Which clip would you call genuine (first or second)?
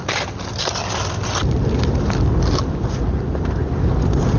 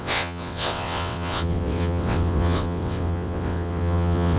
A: first